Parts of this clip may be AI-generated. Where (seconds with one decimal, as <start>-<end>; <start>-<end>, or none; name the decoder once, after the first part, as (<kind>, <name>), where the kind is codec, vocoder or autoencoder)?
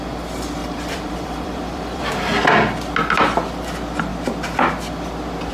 0.6-2.0 (vocoder, BigVGAN v2)